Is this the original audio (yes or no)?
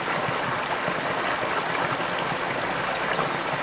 yes